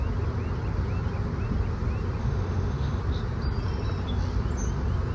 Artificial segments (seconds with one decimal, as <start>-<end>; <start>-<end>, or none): 2.2-3.0